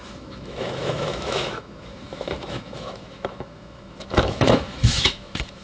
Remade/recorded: remade